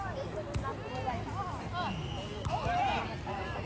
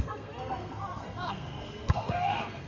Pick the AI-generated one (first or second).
second